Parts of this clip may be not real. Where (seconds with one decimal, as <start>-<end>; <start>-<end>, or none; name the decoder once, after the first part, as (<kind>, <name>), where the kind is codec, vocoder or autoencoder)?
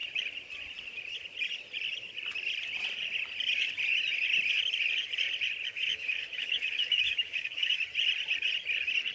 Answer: 5.7-7.8 (autoencoder, DAC-VAE)